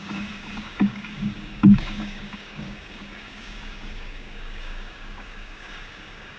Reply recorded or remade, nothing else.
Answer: remade